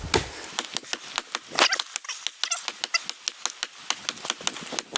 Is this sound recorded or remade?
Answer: recorded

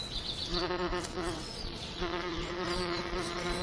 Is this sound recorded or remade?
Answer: remade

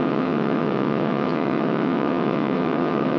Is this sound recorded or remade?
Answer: remade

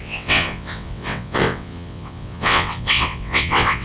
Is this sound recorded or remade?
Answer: remade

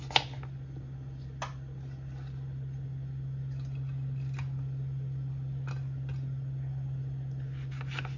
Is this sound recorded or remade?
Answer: recorded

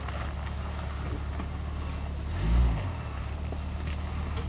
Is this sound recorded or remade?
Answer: recorded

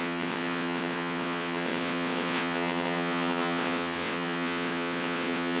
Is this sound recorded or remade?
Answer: remade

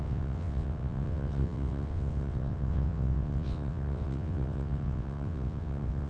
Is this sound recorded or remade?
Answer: remade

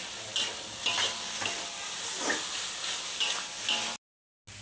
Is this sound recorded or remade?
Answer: recorded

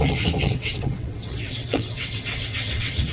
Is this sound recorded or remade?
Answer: remade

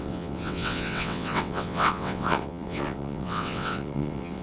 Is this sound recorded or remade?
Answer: remade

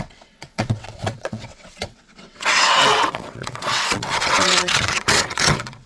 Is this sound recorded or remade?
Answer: remade